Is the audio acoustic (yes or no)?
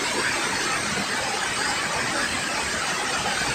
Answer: yes